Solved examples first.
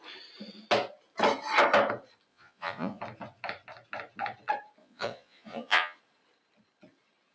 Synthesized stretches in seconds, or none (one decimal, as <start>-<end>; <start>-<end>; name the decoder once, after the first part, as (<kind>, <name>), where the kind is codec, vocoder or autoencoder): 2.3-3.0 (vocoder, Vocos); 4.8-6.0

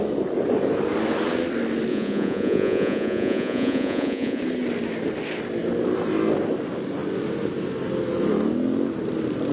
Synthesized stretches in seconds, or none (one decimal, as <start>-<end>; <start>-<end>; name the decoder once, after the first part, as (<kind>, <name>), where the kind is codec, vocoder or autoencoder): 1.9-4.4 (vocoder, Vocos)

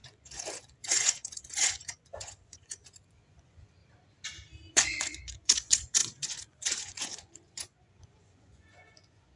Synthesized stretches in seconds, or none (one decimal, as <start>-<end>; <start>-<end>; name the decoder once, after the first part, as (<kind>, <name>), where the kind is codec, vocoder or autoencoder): 0.0-3.8 (vocoder, Vocos); 4.7-9.4

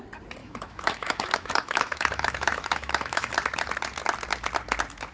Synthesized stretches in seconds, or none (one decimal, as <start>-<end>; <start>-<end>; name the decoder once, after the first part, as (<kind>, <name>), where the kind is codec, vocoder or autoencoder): 0.4-3.3 (autoencoder, DAC-VAE)

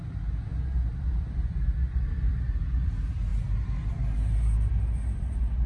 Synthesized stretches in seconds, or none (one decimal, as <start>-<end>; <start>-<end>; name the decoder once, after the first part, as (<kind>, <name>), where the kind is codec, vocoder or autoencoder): none

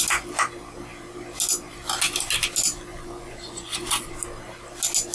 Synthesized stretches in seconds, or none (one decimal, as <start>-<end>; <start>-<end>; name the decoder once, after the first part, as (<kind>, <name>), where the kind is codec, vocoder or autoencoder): 2.9-4.1 (vocoder, Vocos)

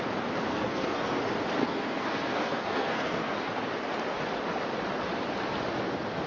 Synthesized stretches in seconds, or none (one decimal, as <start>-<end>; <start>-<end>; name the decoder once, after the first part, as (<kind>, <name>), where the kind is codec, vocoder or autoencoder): 0.5-1.2 (codec, SNAC); 1.6-3.3